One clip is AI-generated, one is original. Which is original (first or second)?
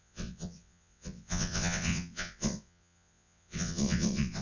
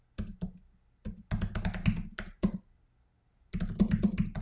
second